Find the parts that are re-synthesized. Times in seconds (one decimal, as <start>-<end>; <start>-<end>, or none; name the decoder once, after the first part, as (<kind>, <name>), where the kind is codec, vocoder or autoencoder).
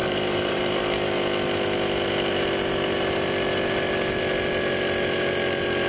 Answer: 0.0-0.8 (vocoder, BigVGAN v2)